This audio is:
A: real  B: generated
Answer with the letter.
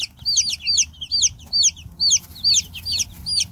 A